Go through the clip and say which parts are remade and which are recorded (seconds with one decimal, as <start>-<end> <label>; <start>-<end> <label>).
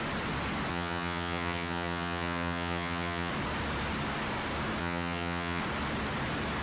0.0-0.7 recorded; 0.7-3.3 remade; 3.3-4.8 recorded; 4.8-5.6 remade; 5.6-6.6 recorded